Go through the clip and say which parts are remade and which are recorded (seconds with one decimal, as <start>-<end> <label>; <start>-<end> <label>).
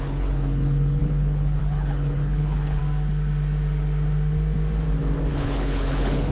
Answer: 0.0-2.8 remade; 2.8-5.3 recorded; 5.3-6.3 remade